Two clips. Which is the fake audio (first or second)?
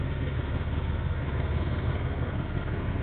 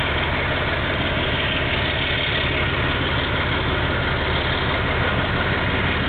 first